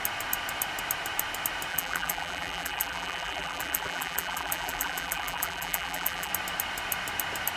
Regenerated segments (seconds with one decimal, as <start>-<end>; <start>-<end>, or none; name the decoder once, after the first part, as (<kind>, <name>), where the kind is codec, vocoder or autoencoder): 1.7-6.3 (vocoder, BigVGAN v2)